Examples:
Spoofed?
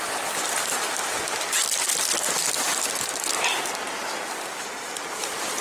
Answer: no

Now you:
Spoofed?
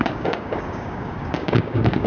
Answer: yes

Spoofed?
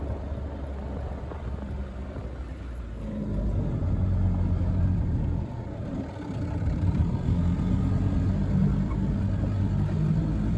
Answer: no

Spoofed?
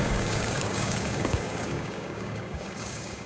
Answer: yes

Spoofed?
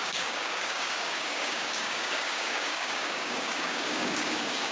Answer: yes